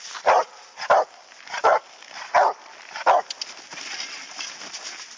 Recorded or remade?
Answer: recorded